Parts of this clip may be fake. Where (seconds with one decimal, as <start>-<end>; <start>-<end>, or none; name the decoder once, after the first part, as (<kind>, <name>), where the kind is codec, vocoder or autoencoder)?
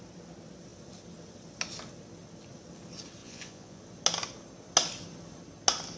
3.2-3.8 (vocoder, Vocos)